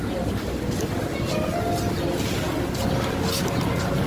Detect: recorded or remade recorded